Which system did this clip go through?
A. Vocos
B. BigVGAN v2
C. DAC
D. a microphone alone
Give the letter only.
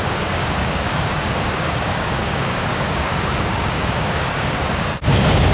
C